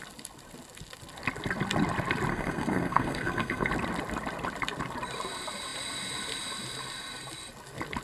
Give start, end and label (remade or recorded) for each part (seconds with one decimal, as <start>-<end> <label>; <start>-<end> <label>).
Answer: 0.0-2.3 recorded; 2.3-3.7 remade; 3.7-8.0 recorded